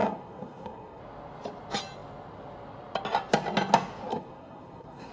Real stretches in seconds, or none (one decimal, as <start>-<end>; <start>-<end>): 1.0-4.1